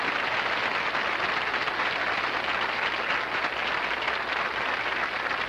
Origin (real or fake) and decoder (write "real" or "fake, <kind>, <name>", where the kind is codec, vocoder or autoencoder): real